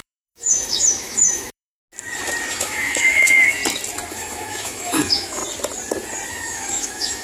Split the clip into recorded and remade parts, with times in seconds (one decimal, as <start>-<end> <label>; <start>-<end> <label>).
0.0-1.8 remade; 1.8-2.5 recorded; 2.5-3.6 remade; 3.6-4.1 recorded; 4.1-5.4 remade; 5.4-6.3 recorded; 6.3-7.2 remade